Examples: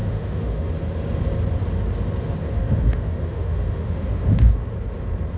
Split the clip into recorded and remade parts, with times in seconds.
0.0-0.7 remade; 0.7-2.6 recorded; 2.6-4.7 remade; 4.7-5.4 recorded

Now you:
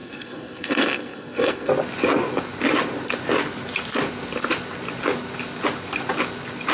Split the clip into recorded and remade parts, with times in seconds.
0.0-1.7 remade; 1.7-6.7 recorded

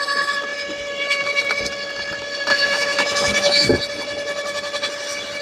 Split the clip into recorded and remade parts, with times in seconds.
0.0-2.5 recorded; 2.5-3.7 remade; 3.7-5.4 recorded

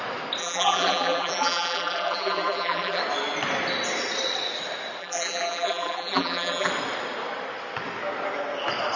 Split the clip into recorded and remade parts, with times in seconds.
0.0-0.4 recorded; 0.4-3.0 remade; 3.0-5.0 recorded; 5.0-6.7 remade; 6.7-9.0 recorded

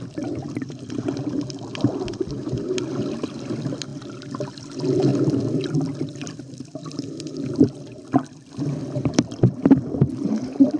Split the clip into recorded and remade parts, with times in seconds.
0.0-3.9 remade; 3.9-4.5 recorded; 4.5-10.8 remade

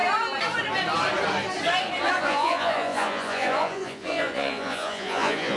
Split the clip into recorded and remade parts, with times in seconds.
0.0-2.2 recorded; 2.2-5.6 remade

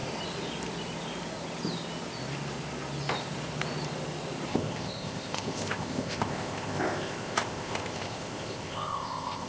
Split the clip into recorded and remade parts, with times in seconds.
0.0-4.5 recorded; 4.5-9.5 remade